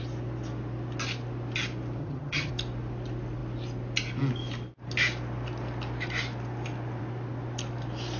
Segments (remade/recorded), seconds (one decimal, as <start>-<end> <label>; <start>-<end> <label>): 0.0-2.0 recorded; 2.0-2.5 remade; 2.5-8.2 recorded